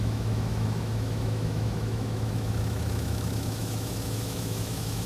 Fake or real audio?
fake